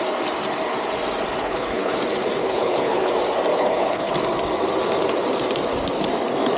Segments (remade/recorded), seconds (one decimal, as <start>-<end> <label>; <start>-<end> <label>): 0.0-1.4 recorded; 1.4-2.0 remade; 2.0-2.4 recorded; 2.4-3.1 remade; 3.1-3.5 recorded; 3.5-4.1 remade; 4.1-6.6 recorded